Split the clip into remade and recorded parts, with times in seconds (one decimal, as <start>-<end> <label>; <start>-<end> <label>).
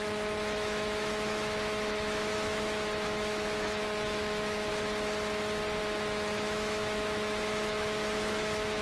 0.0-4.7 remade; 4.7-5.8 recorded; 5.8-8.8 remade